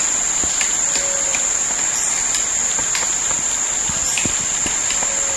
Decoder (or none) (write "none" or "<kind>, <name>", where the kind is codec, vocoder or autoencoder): none